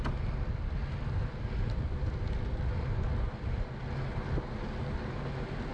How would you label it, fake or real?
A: real